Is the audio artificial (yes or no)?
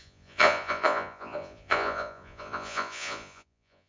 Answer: yes